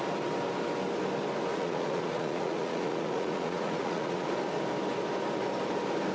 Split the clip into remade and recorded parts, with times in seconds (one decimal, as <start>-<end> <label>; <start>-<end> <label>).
0.0-1.5 recorded; 1.5-4.3 remade; 4.3-6.1 recorded

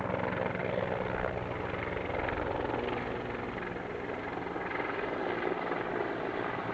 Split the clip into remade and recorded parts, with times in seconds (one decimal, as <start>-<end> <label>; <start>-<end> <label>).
0.0-6.7 recorded